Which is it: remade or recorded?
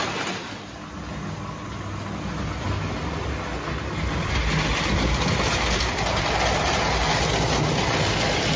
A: recorded